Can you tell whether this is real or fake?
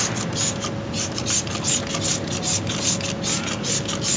real